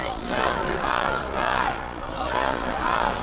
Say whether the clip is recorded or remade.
remade